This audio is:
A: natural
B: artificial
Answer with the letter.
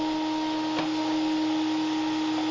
A